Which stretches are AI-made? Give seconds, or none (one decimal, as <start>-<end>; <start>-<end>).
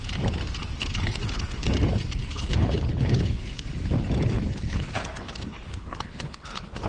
0.8-1.7; 2.2-3.7; 4.3-6.9